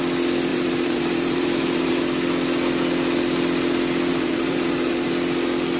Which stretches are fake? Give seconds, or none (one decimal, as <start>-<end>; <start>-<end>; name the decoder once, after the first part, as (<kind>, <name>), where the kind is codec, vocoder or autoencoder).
0.5-1.9 (vocoder, BigVGAN v2); 4.1-5.1

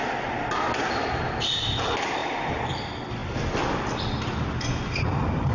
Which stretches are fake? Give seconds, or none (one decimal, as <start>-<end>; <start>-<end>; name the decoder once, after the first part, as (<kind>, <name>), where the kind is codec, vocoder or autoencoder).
none

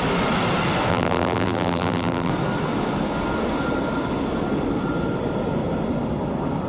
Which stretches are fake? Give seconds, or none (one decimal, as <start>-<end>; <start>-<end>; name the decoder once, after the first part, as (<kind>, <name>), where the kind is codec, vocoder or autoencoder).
0.9-2.3 (vocoder, BigVGAN v2)

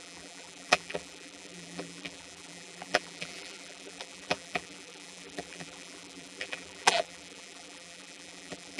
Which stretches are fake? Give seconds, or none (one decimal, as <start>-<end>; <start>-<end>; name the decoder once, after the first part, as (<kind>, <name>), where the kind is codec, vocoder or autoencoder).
0.0-8.8 (vocoder, BigVGAN v2)

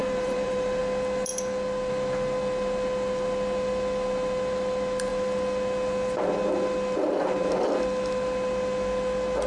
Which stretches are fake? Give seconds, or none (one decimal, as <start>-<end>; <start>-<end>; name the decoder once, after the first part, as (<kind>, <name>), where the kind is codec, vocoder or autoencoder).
0.0-0.8 (vocoder, BigVGAN v2)

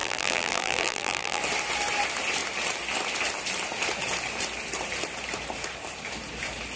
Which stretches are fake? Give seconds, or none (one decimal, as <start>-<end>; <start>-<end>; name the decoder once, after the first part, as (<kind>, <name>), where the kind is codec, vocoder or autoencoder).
0.0-1.4 (vocoder, BigVGAN v2)

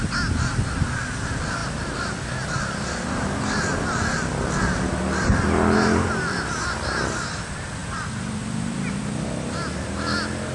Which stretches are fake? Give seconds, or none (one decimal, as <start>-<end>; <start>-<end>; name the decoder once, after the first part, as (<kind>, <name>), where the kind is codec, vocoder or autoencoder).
0.5-1.2 (vocoder, BigVGAN v2); 1.6-5.0